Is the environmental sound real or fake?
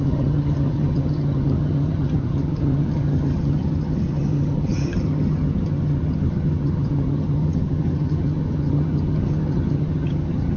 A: fake